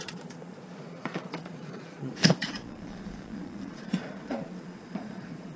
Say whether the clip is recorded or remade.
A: remade